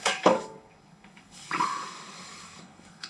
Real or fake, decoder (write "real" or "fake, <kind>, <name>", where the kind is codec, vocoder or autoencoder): fake, codec, DAC